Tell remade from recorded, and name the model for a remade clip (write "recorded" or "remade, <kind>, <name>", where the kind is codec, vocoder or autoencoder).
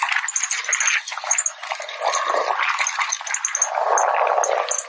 recorded